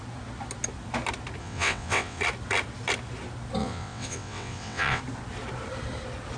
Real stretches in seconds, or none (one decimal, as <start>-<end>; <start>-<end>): 0.0-1.4; 2.2-3.6; 5.0-6.4